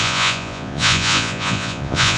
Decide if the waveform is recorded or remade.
remade